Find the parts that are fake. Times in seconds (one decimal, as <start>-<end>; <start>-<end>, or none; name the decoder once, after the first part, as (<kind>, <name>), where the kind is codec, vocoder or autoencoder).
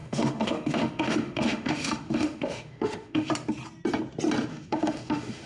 0.0-3.3 (autoencoder, DAC-VAE); 4.5-5.5